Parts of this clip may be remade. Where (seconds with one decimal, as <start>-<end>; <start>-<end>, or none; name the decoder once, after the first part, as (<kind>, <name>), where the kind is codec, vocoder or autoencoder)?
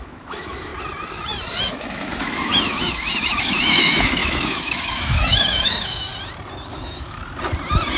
0.0-0.7 (autoencoder, DAC-VAE); 1.7-6.1; 6.7-7.2